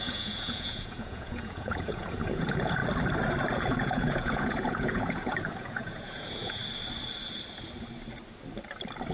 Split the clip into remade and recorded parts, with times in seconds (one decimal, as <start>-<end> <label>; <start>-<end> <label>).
0.0-2.8 remade; 2.8-3.5 recorded; 3.5-6.6 remade; 6.6-9.1 recorded